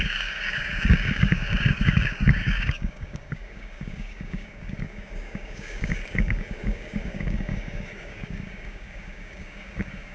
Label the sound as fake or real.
fake